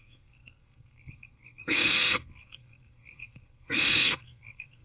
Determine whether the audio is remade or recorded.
remade